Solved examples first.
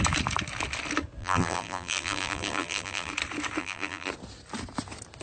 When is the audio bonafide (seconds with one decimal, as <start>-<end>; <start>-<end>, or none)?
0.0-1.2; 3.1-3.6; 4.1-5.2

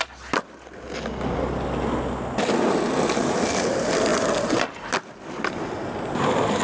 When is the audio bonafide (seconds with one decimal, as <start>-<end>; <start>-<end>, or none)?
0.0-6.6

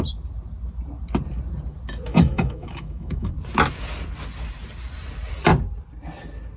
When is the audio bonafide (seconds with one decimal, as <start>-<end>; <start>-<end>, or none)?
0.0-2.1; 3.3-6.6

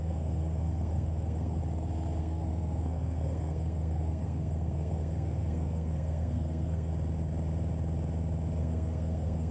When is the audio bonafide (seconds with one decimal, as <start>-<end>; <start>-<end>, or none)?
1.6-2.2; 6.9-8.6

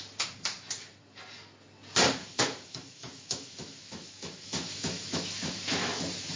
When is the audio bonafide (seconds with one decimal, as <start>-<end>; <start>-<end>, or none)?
0.0-2.2; 6.0-6.4

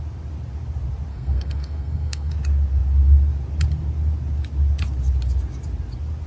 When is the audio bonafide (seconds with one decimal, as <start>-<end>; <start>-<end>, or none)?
0.0-1.1; 2.3-6.3

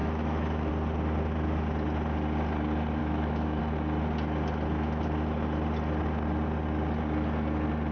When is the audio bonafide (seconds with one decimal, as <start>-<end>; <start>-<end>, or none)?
0.7-3.0; 3.6-7.9